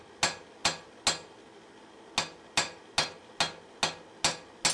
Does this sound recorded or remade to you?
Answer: recorded